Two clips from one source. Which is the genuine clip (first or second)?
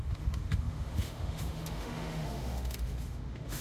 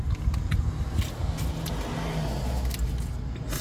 second